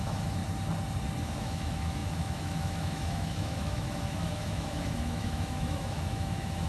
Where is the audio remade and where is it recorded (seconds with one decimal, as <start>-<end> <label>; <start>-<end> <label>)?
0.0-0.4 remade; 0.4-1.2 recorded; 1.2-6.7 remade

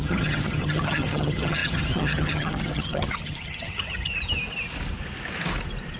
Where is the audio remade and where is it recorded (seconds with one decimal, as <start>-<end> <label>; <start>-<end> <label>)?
0.0-4.1 remade; 4.1-6.0 recorded

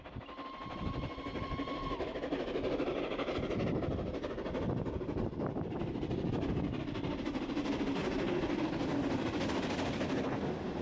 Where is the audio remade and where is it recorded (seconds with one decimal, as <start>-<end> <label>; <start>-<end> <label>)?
0.0-10.8 recorded

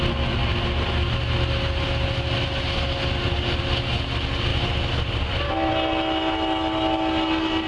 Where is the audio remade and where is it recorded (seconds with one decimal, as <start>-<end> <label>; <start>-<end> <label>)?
0.0-7.7 recorded

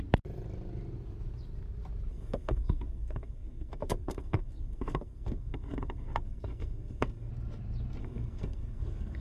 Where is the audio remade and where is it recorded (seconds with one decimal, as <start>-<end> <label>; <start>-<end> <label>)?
0.0-2.1 recorded; 2.1-7.3 remade; 7.3-8.0 recorded; 8.0-9.2 remade

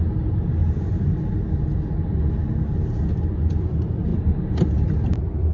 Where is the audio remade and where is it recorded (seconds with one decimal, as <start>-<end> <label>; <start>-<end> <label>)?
0.0-0.6 recorded; 0.6-2.3 remade; 2.3-4.1 recorded; 4.1-5.5 remade